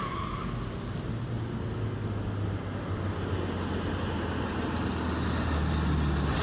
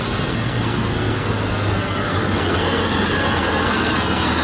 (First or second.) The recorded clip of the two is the first